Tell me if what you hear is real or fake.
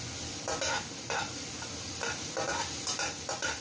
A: real